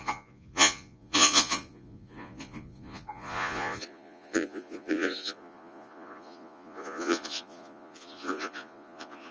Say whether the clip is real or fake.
fake